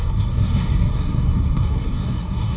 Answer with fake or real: fake